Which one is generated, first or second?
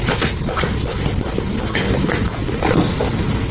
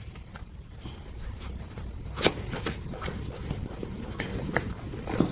second